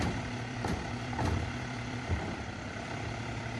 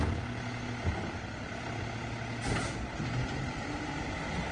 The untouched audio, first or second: second